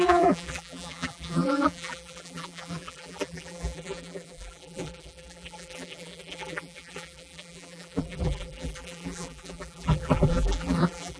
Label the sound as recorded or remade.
remade